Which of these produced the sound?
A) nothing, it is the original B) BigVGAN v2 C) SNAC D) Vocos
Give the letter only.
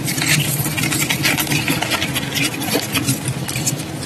A